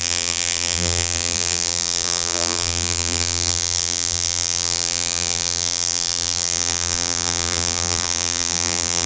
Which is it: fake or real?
fake